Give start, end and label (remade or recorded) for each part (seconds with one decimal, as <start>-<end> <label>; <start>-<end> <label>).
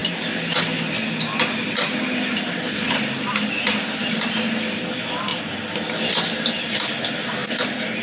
0.0-5.3 recorded; 5.3-6.0 remade; 6.0-7.4 recorded; 7.4-8.0 remade